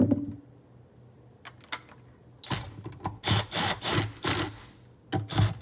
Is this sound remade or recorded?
recorded